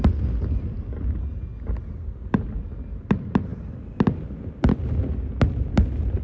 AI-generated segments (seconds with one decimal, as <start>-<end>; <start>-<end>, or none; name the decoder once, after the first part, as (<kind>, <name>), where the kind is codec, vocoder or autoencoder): none